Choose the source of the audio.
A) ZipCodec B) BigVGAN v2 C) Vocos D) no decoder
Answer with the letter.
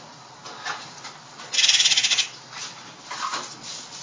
D